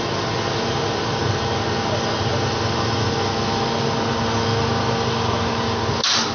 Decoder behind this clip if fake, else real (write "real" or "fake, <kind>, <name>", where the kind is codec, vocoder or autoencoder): real